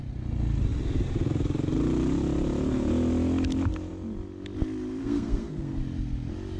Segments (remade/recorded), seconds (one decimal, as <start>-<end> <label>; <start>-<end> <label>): 0.0-5.0 recorded; 5.0-5.8 remade; 5.8-6.6 recorded